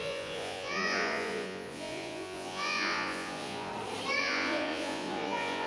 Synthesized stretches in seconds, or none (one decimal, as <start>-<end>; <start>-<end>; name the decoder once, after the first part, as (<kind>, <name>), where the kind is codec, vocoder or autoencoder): 0.0-3.7 (vocoder, Vocos); 4.2-5.7